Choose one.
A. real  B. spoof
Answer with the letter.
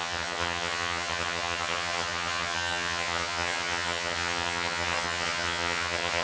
B